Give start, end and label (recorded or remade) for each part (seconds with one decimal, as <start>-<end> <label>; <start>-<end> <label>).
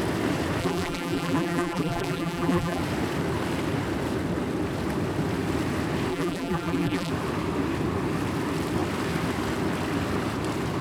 0.0-0.6 recorded; 0.6-2.8 remade; 2.8-6.1 recorded; 6.1-7.1 remade; 7.1-10.8 recorded